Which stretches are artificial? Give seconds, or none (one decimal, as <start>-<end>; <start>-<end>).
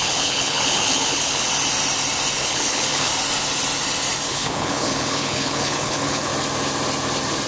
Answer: 0.0-1.5; 2.4-3.1; 4.3-6.3